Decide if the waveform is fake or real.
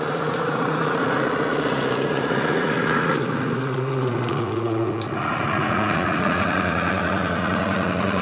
fake